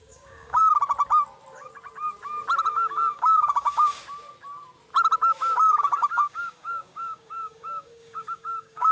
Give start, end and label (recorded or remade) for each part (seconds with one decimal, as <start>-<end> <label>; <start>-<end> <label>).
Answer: 0.0-0.6 remade; 0.6-2.7 recorded; 2.7-4.0 remade; 4.0-5.8 recorded; 5.8-8.9 remade